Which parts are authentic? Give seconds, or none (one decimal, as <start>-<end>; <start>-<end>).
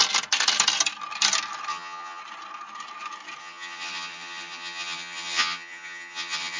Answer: 0.0-1.7; 2.2-3.4